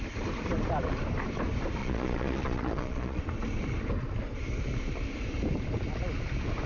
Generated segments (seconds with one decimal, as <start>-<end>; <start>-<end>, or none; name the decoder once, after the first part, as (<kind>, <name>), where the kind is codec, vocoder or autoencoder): 1.8-3.2 (vocoder, Vocos)